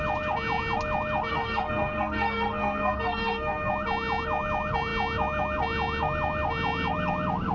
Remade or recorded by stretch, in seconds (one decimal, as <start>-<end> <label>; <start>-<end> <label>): 0.0-1.3 recorded; 1.3-3.7 remade; 3.7-7.5 recorded